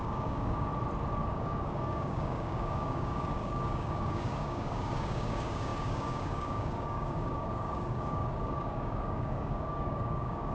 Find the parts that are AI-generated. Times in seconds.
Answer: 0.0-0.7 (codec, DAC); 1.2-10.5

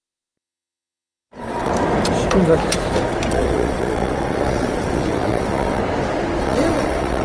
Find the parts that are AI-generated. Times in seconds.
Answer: 0.0-1.7 (vocoder, WaveNeXt); 3.3-5.8; 6.4-7.2

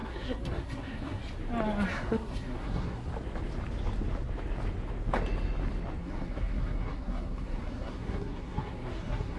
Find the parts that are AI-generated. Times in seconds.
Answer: 0.0-1.2 (codec, SNAC); 1.9-3.1; 6.0-9.4

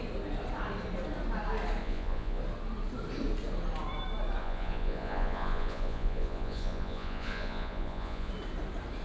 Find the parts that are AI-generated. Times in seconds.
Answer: 1.8-2.4 (vocoder, Vocos); 4.4-8.3

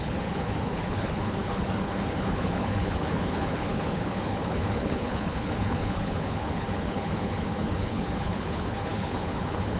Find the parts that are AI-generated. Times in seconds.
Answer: 0.0-9.8 (codec, HILCodec)

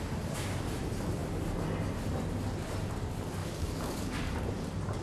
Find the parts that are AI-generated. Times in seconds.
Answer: 3.4-4.4 (codec, DAC)

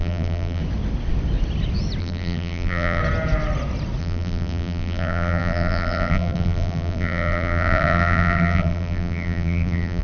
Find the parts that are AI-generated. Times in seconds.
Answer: 0.0-0.6 (vocoder, BigVGAN v2); 2.0-3.0; 4.0-10.0